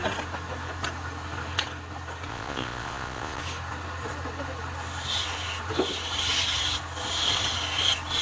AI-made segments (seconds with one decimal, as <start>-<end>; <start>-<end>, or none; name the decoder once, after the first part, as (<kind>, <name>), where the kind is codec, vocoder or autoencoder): 2.3-3.4 (vocoder, Vocos)